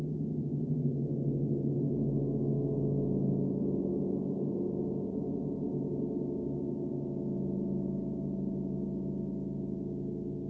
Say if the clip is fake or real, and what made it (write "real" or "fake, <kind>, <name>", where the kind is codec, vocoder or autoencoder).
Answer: real